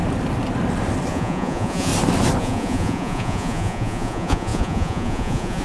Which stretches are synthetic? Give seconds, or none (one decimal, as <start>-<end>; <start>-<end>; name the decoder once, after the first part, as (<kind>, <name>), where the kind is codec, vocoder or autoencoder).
1.1-1.9 (vocoder, Vocos); 2.4-5.6